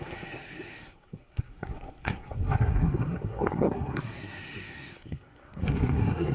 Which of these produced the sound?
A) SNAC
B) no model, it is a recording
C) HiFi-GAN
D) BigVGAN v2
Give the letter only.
A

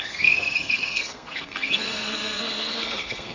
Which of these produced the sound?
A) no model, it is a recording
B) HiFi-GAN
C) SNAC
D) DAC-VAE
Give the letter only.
C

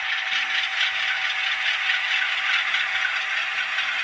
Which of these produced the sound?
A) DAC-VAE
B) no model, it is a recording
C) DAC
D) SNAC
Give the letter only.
B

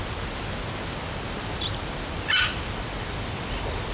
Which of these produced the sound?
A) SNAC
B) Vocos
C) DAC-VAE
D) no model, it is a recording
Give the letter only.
D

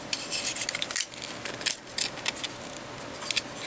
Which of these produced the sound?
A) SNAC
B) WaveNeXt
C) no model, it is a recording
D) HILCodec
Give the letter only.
C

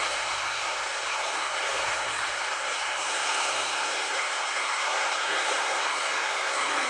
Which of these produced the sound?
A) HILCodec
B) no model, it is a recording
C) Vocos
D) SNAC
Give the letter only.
D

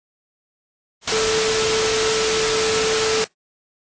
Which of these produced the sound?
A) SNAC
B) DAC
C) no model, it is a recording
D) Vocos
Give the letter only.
C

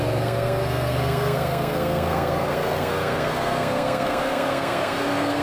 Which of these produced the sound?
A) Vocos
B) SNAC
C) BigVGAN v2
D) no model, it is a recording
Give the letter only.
B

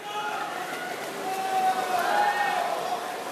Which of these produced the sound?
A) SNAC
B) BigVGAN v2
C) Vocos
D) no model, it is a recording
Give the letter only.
D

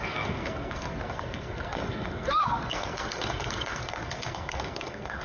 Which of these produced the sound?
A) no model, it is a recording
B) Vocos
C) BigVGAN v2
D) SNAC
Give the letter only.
D